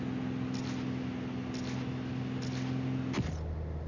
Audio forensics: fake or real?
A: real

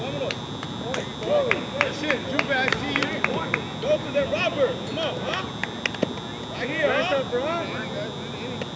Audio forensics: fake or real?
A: real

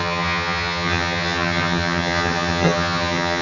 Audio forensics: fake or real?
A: fake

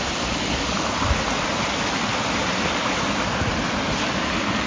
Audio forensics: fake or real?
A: real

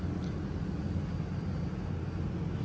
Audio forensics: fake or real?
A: real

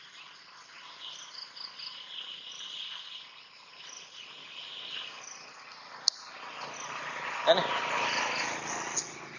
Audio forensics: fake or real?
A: real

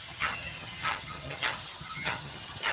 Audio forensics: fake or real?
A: fake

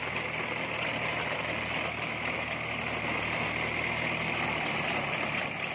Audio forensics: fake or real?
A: real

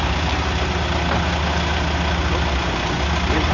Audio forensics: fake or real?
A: real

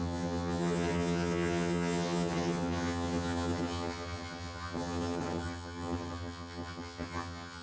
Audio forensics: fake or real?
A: fake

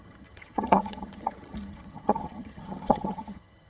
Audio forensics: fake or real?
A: fake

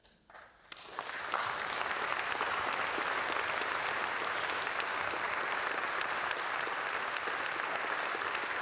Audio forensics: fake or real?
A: real